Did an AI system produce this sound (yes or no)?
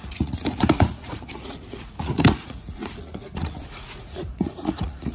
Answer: yes